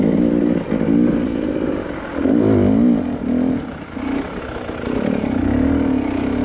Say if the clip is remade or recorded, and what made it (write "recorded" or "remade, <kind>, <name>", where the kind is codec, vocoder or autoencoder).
recorded